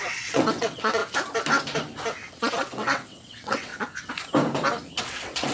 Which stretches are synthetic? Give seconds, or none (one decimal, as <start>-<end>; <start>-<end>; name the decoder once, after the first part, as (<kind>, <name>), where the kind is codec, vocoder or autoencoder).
0.0-1.0 (vocoder, WaveNeXt); 2.3-3.7; 5.0-5.5